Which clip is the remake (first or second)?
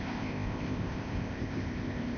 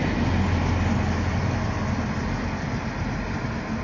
first